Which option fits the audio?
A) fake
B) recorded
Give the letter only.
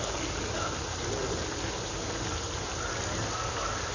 B